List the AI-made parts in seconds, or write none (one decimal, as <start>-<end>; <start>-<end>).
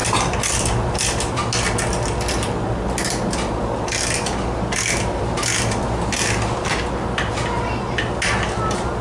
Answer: none